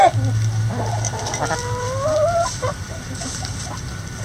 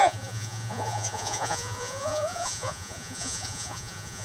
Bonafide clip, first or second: first